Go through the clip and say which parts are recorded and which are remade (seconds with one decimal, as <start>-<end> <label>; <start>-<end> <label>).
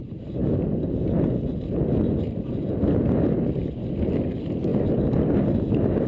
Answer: 0.0-6.1 recorded